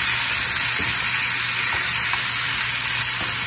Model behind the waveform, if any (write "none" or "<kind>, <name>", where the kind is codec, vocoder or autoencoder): none